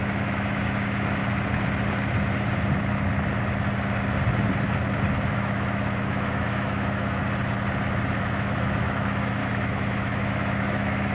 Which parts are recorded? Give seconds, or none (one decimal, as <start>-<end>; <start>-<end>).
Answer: 1.2-5.3; 7.2-8.2